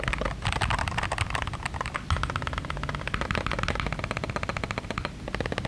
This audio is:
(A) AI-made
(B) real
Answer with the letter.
B